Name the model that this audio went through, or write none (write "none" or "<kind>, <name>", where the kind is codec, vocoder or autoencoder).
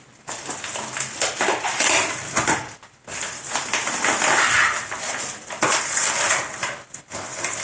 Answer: none